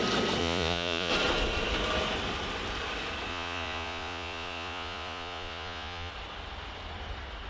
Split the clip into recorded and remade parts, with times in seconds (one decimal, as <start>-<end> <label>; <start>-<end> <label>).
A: 0.0-0.4 recorded; 0.4-1.1 remade; 1.1-3.3 recorded; 3.3-6.1 remade; 6.1-7.5 recorded